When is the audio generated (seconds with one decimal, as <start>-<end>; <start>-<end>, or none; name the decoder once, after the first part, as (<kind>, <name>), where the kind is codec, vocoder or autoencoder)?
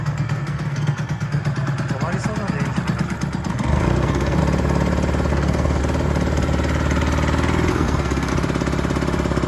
0.0-1.4 (codec, SNAC); 3.5-4.4; 5.3-5.8; 7.7-8.3